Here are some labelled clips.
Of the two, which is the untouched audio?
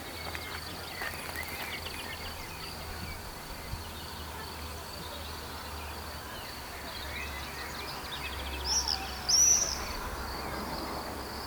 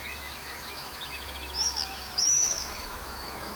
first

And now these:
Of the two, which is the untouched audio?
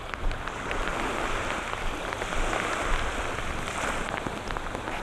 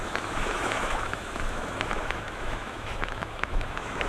first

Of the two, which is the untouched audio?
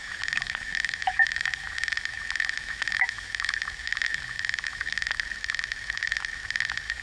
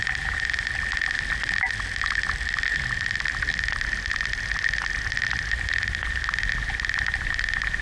second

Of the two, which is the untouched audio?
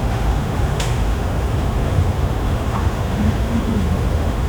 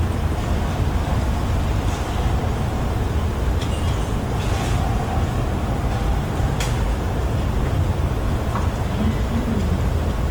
second